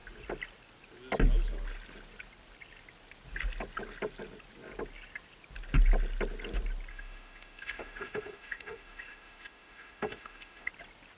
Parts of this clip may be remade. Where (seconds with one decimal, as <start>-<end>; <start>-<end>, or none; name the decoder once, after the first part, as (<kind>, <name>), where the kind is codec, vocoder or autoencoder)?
6.9-10.7 (autoencoder, DAC-VAE)